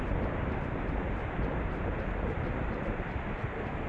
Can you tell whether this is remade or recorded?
remade